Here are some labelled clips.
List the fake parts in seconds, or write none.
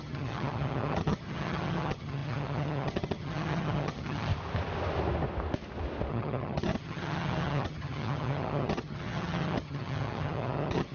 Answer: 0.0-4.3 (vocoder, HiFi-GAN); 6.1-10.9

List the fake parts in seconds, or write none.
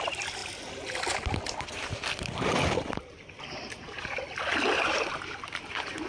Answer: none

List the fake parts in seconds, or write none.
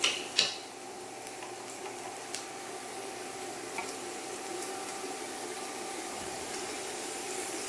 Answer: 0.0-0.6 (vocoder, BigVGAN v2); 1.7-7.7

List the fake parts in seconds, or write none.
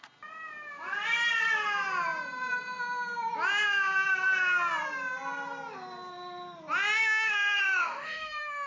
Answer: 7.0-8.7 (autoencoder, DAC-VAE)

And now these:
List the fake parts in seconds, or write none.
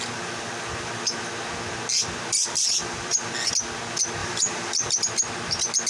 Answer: 2.4-3.3 (vocoder, BigVGAN v2); 4.2-4.9